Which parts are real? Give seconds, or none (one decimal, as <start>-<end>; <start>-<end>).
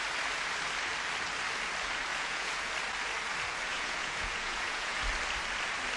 0.0-2.1; 2.7-3.7; 5.0-6.0